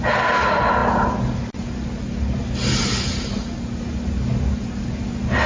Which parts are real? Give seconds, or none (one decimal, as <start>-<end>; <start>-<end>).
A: 0.0-5.5